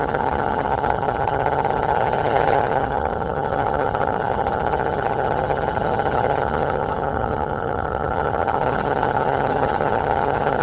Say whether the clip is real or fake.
fake